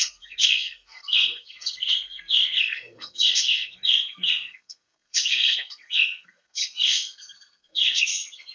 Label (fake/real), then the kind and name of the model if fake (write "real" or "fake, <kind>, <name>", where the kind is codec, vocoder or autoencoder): fake, codec, SNAC